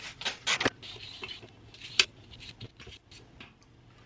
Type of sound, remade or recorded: recorded